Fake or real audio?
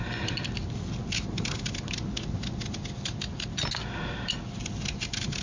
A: real